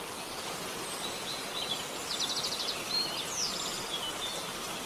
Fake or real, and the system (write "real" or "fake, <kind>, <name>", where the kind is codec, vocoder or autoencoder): real